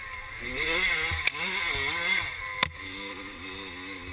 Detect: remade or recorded recorded